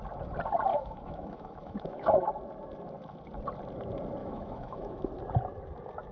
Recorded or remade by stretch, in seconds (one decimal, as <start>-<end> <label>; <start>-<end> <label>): 0.0-0.7 recorded; 0.7-2.3 remade; 2.3-4.2 recorded; 4.2-5.1 remade; 5.1-6.1 recorded